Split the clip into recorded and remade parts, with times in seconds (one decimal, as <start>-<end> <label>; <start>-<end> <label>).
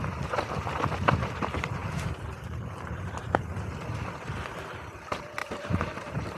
0.0-1.8 recorded; 1.8-2.3 remade; 2.3-5.4 recorded; 5.4-6.4 remade